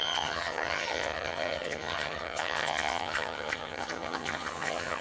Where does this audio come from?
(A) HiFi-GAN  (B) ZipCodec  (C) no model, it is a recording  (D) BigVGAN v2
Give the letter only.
A